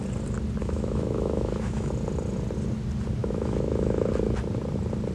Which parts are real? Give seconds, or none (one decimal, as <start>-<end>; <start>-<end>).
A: 0.0-0.6; 1.9-3.2; 4.1-5.1